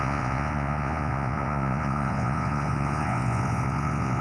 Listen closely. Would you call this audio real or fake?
fake